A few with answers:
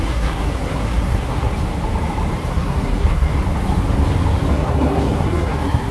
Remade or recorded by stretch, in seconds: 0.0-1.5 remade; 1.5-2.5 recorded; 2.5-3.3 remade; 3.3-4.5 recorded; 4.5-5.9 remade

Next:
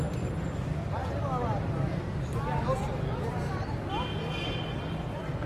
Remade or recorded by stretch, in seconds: 0.0-5.5 recorded

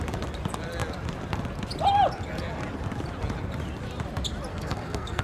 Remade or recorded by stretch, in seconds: 0.0-4.5 recorded; 4.5-5.2 remade

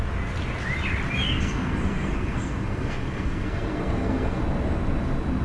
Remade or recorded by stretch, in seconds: 0.0-1.2 recorded; 1.2-4.4 remade; 4.4-5.4 recorded

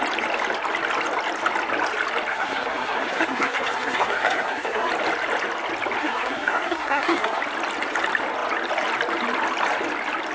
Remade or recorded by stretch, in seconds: 0.0-2.3 recorded; 2.3-4.9 remade; 4.9-6.0 recorded; 6.0-7.4 remade; 7.4-10.3 recorded

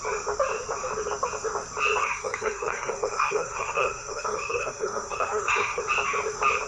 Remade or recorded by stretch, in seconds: 0.0-2.0 recorded; 2.0-5.8 remade; 5.8-6.7 recorded